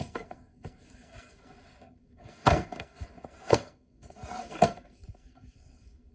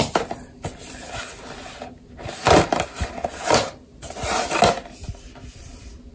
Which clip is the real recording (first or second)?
second